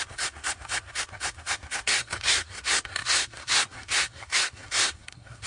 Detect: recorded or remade remade